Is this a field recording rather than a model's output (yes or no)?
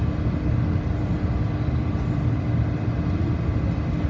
yes